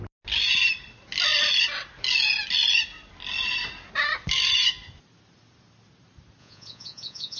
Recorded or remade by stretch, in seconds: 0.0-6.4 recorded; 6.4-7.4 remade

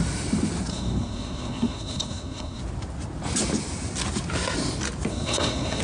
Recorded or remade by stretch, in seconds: 0.0-0.7 recorded; 0.7-2.6 remade; 2.6-5.1 recorded; 5.1-5.8 remade

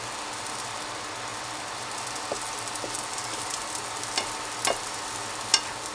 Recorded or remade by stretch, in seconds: 0.0-1.3 recorded; 1.3-2.2 remade; 2.2-3.2 recorded; 3.2-3.8 remade; 3.8-5.9 recorded

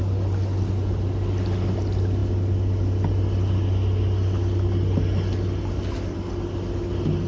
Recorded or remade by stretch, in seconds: 0.0-7.3 recorded

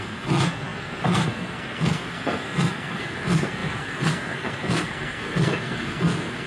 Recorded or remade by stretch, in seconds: 0.0-6.5 remade

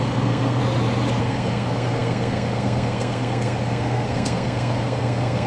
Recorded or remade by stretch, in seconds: 0.0-0.6 remade; 0.6-1.2 recorded; 1.2-5.5 remade

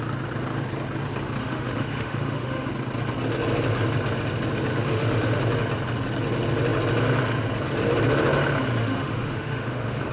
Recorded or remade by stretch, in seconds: 0.0-1.4 recorded; 1.4-2.7 remade; 2.7-4.7 recorded; 4.7-5.4 remade; 5.4-8.8 recorded; 8.8-10.1 remade

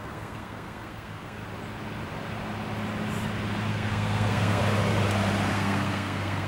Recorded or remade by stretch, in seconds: 0.0-1.4 remade; 1.4-3.7 recorded; 3.7-4.6 remade; 4.6-5.5 recorded; 5.5-6.5 remade